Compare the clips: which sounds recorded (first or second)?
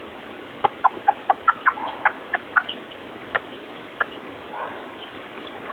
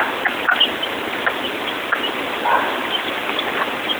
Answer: second